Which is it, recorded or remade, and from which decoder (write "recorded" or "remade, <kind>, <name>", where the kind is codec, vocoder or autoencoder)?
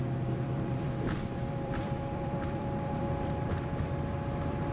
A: remade, vocoder, BigVGAN v2